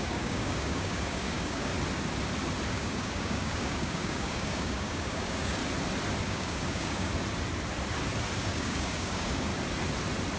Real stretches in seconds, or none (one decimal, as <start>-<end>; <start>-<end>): 1.7-2.7; 5.6-6.2; 7.1-8.4; 9.5-10.4